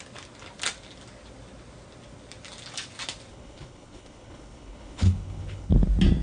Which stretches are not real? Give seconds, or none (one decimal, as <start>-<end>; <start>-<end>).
3.3-5.7